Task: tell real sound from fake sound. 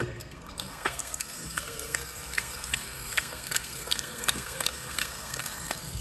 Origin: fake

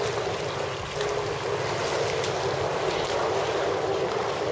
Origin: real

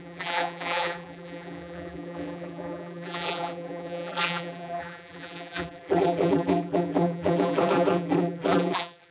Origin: fake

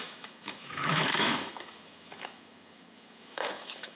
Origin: fake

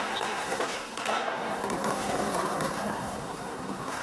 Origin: fake